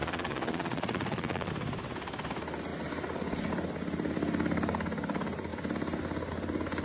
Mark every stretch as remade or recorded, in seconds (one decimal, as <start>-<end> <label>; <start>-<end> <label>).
0.0-1.5 remade; 1.5-6.8 recorded